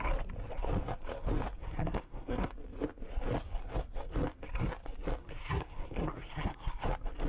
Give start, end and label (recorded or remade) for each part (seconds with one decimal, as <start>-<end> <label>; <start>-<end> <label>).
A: 0.0-1.6 recorded; 1.6-2.5 remade; 2.5-5.2 recorded; 5.2-6.7 remade; 6.7-7.3 recorded